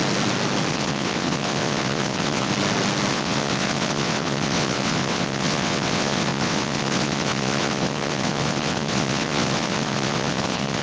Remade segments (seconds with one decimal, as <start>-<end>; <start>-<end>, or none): 0.7-2.5; 3.1-10.8